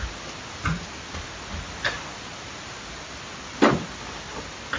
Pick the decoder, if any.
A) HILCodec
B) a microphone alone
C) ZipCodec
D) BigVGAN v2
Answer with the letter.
B